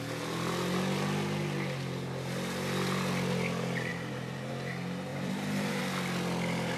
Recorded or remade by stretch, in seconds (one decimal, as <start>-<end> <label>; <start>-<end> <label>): 0.0-3.9 recorded; 3.9-4.5 remade; 4.5-5.1 recorded; 5.1-5.8 remade; 5.8-6.8 recorded

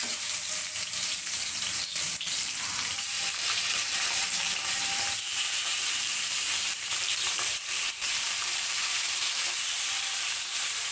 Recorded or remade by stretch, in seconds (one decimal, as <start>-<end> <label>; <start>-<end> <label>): 0.0-10.9 remade

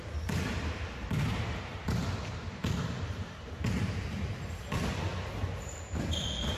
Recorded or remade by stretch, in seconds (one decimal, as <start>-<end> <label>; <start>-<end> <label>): 0.0-6.6 remade